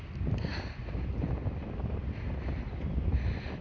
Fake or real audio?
real